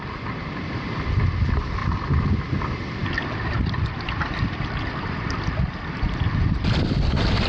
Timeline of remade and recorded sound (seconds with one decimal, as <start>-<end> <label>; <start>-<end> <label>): 0.0-7.5 recorded